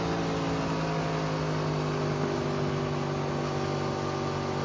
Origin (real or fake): real